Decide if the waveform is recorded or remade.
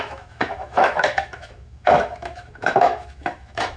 remade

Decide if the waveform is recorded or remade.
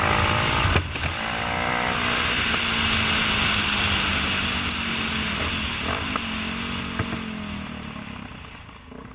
recorded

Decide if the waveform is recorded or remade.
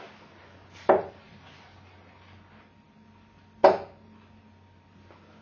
recorded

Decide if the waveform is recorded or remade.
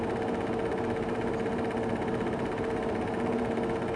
recorded